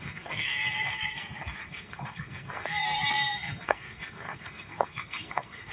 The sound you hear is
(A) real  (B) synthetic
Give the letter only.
B